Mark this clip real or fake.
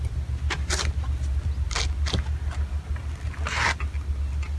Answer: real